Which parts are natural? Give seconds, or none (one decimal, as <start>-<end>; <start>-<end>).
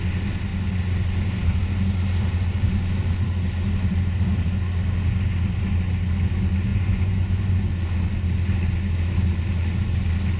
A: 0.0-6.7; 7.7-10.4